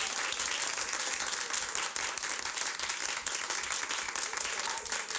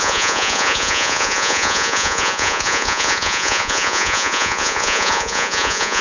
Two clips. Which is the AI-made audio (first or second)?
second